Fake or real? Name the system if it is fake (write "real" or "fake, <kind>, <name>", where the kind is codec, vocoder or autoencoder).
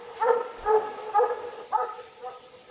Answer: real